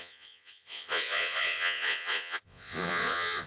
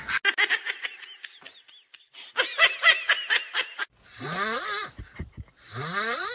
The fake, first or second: first